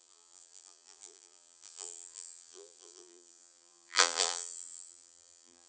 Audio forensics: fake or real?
fake